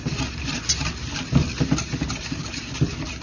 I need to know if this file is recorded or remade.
recorded